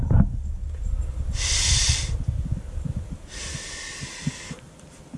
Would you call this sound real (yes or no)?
yes